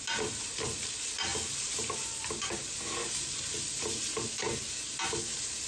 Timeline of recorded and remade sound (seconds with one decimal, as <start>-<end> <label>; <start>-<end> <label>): 0.0-5.7 recorded